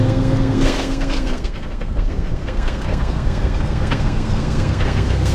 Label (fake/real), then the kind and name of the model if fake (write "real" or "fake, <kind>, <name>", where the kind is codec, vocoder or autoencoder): fake, codec, SNAC